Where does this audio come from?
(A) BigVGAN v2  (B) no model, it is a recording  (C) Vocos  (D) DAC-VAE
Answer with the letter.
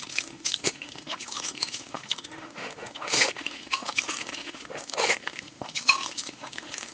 D